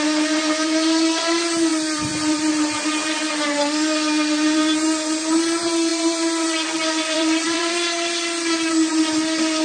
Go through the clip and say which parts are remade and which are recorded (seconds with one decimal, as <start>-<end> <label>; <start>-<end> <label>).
0.0-1.7 recorded; 1.7-2.5 remade; 2.5-5.9 recorded; 5.9-7.7 remade; 7.7-9.6 recorded